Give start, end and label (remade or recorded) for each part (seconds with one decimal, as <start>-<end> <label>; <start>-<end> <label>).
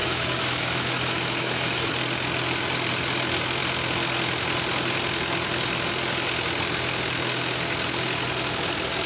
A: 0.0-1.9 remade; 1.9-9.1 recorded